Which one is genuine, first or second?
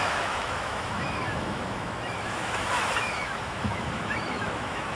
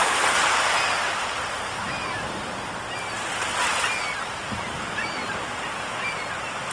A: second